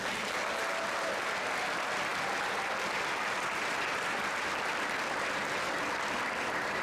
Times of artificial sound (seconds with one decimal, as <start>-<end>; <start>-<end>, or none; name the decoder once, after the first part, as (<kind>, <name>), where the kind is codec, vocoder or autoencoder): none